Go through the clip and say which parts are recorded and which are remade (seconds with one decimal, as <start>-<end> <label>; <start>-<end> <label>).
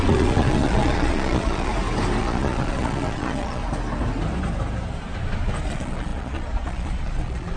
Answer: 0.0-1.7 remade; 1.7-2.2 recorded; 2.2-3.6 remade; 3.6-5.6 recorded; 5.6-7.6 remade